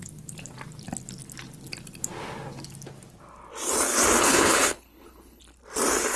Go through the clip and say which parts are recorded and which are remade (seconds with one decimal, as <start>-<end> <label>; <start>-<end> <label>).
0.0-4.2 recorded; 4.2-5.4 remade; 5.4-6.2 recorded